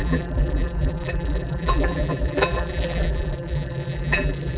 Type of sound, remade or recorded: remade